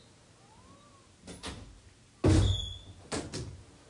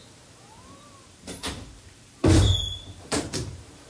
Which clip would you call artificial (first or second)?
second